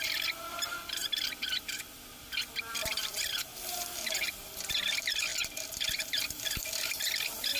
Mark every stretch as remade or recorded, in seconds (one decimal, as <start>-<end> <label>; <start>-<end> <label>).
0.0-1.0 remade; 1.0-2.6 recorded; 2.6-3.5 remade; 3.5-4.1 recorded; 4.1-7.6 remade